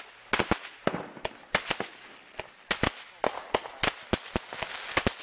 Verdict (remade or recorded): recorded